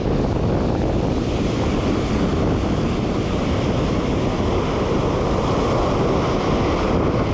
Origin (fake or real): real